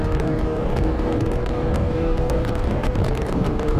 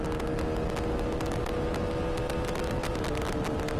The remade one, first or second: first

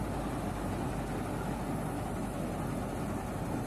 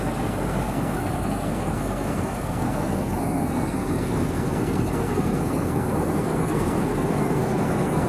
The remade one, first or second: second